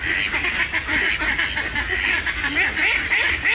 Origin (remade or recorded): recorded